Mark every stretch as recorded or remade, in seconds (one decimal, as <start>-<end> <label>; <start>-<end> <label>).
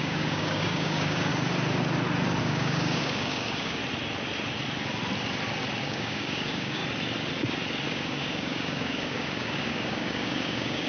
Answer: 0.0-1.3 remade; 1.3-2.4 recorded; 2.4-3.8 remade; 3.8-5.8 recorded; 5.8-6.8 remade; 6.8-7.9 recorded; 7.9-10.9 remade